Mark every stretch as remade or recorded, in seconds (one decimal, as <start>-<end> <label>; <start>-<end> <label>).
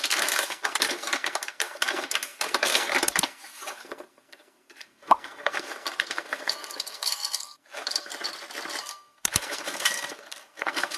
0.0-8.1 remade; 8.1-8.8 recorded; 8.8-11.0 remade